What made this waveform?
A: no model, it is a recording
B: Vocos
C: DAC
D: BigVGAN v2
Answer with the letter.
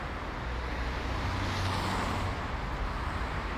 A